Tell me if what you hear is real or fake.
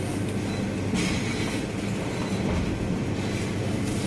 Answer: real